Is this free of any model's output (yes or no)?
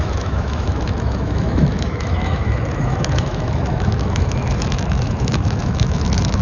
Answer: no